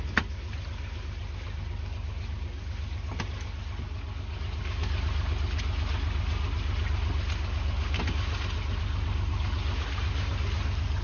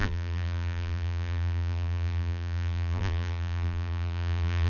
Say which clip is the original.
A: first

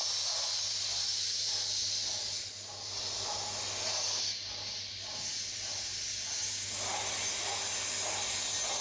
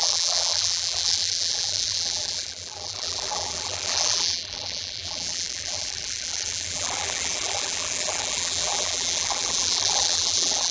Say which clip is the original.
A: first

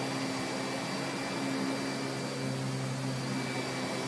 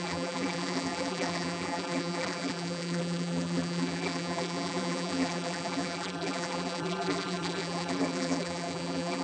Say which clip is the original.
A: first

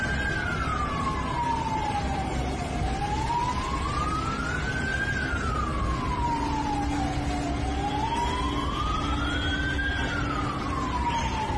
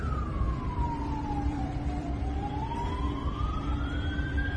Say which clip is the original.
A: first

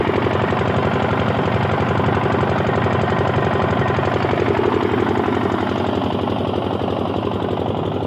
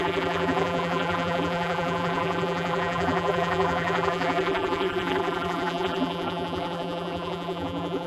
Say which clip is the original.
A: first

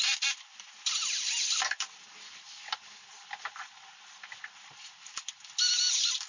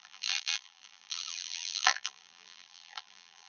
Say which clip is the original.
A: first